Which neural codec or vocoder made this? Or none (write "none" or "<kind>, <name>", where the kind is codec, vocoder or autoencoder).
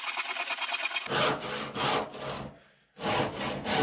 none